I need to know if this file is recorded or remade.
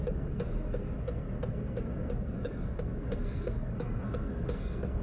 remade